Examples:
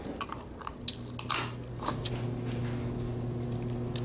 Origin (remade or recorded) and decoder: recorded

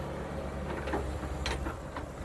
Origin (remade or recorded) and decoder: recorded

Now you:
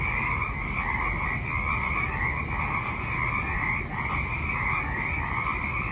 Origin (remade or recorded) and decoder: recorded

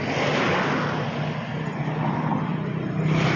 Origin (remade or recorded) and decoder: recorded